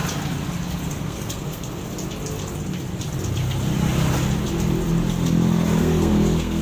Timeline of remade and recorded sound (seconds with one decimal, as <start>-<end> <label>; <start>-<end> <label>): 0.0-0.9 recorded; 0.9-1.8 remade; 1.8-5.8 recorded; 5.8-6.6 remade

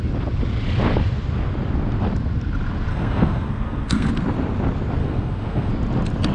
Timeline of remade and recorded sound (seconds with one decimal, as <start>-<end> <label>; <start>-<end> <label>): 0.0-2.9 recorded; 2.9-4.1 remade; 4.1-5.0 recorded; 5.0-5.7 remade; 5.7-6.3 recorded

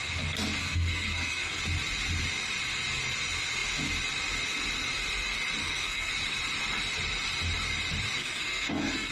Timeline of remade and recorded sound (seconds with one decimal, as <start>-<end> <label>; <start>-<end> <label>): 0.0-0.6 recorded; 0.6-1.6 remade; 1.6-5.6 recorded; 5.6-6.1 remade; 6.1-8.2 recorded; 8.2-9.1 remade

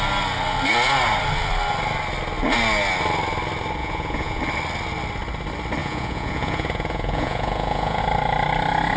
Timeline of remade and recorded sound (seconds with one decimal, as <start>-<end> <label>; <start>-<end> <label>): 0.0-3.8 recorded; 3.8-4.4 remade; 4.4-5.8 recorded; 5.8-8.0 remade; 8.0-9.0 recorded

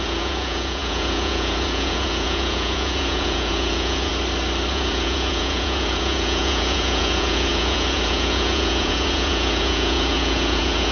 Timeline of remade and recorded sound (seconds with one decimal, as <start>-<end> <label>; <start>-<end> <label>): 0.0-4.1 remade; 4.1-4.7 recorded; 4.7-10.9 remade